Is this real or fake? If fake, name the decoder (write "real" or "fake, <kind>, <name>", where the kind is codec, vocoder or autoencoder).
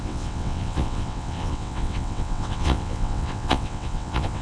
fake, vocoder, WaveNeXt